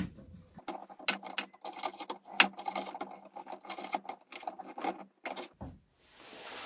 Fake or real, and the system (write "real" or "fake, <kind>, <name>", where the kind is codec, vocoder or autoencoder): real